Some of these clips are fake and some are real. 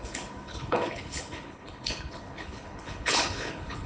fake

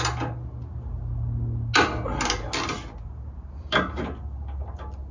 real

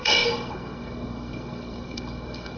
fake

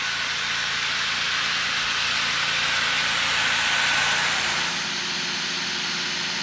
real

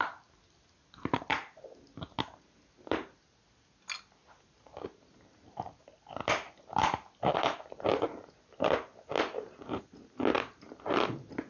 real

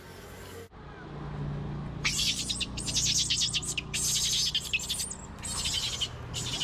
real